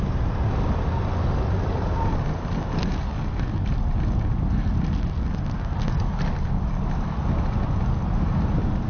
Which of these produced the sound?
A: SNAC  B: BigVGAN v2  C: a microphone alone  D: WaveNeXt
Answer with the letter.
C